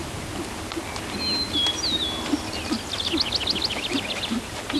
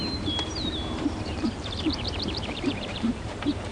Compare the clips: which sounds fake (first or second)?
second